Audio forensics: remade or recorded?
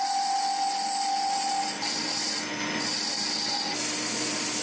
recorded